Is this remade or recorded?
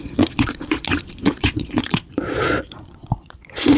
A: remade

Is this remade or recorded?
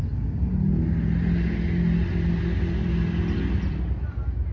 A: recorded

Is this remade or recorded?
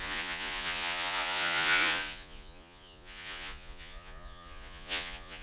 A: remade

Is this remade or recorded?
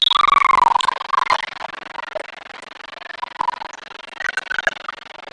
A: recorded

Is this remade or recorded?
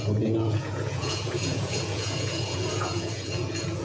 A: remade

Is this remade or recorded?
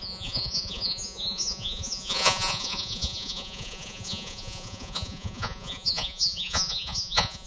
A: remade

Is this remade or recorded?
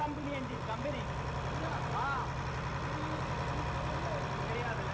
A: recorded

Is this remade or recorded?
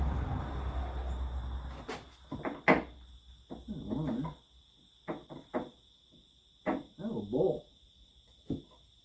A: recorded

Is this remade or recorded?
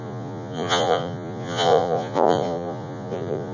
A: remade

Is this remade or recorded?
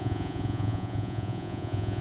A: remade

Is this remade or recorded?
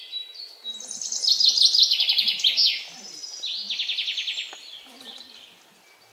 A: recorded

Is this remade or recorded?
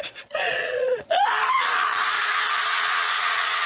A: remade